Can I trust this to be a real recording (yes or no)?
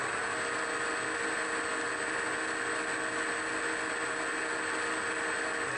yes